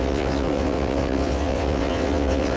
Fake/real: fake